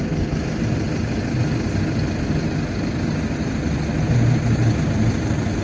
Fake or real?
real